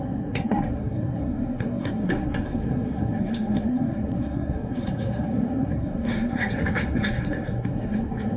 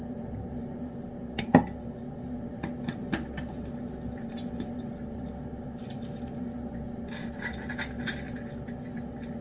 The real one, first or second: second